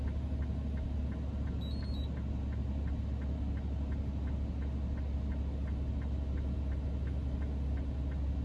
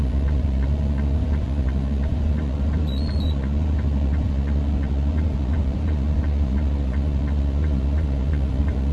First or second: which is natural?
first